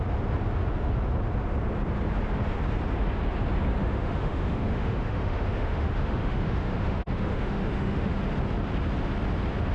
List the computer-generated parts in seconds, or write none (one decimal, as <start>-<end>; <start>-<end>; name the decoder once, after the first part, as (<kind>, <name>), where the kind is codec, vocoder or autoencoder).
3.8-8.2 (autoencoder, DAC-VAE)